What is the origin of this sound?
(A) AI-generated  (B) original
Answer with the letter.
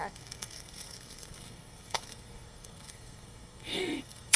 A